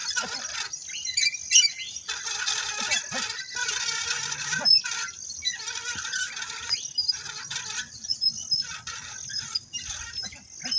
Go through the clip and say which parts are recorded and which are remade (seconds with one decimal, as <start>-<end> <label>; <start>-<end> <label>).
0.0-10.8 recorded